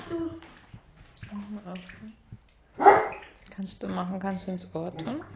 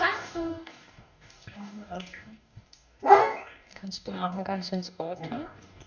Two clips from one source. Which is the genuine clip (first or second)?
first